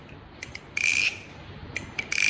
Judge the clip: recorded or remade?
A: recorded